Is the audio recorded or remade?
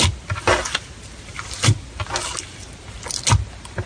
recorded